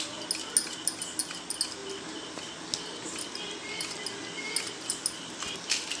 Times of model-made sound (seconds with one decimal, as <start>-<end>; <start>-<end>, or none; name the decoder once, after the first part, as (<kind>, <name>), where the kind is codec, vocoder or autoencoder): none